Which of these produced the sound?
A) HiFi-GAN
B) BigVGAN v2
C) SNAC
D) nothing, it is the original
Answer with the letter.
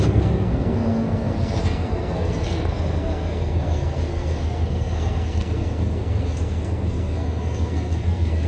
C